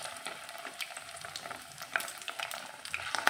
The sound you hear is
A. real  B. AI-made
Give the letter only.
B